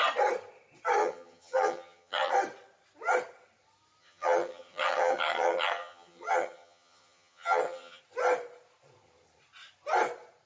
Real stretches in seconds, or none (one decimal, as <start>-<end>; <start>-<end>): 0.0-1.0; 2.3-4.0; 8.0-10.5